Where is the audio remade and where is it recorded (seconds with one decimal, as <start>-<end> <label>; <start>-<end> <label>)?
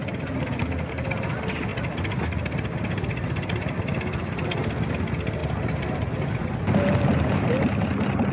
0.0-8.3 recorded